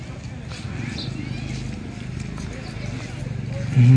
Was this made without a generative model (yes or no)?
yes